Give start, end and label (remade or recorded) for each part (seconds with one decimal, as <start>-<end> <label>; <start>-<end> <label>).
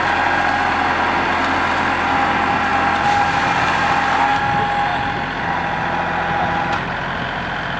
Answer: 0.0-7.8 recorded